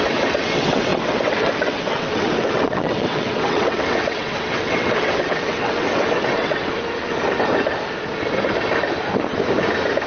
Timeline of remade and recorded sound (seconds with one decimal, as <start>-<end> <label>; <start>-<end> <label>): 0.0-6.7 remade; 6.7-10.1 recorded